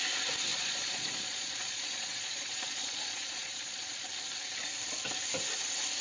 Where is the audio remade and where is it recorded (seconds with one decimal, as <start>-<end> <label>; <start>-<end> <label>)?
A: 0.0-0.5 recorded; 0.5-4.1 remade; 4.1-6.0 recorded